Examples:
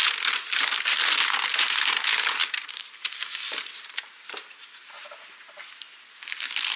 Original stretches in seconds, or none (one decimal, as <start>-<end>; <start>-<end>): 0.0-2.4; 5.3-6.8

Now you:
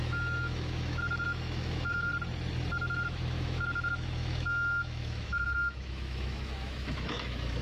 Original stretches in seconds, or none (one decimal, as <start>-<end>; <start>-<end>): 2.1-2.7

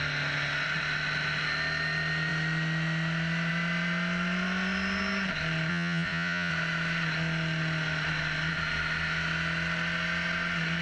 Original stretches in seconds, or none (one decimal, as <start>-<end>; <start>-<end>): 0.0-5.7; 6.5-10.8

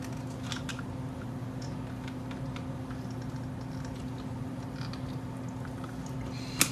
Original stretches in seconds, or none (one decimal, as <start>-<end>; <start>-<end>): 0.0-6.7

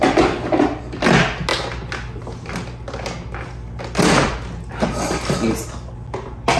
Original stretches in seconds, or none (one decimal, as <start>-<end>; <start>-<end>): 0.0-6.6